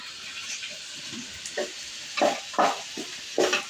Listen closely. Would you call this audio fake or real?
real